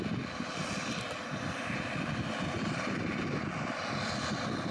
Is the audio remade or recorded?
recorded